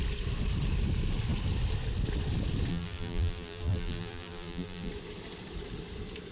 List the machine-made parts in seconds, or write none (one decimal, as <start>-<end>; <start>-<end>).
2.7-4.9